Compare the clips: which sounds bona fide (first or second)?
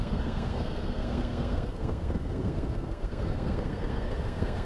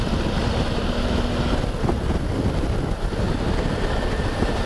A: second